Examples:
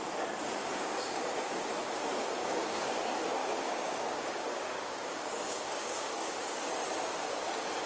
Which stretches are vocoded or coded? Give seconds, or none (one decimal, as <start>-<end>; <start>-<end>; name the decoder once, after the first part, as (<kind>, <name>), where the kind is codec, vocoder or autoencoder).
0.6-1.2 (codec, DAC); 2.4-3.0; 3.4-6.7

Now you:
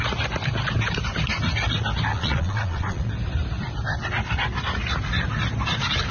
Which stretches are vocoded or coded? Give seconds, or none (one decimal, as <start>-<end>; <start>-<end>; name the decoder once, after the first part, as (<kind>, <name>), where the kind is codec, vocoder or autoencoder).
2.1-3.1 (vocoder, Vocos)

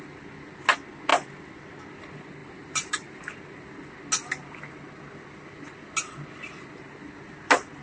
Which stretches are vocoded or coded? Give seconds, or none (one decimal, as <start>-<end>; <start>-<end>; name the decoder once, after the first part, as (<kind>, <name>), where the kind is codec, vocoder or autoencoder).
2.4-3.3 (vocoder, BigVGAN v2)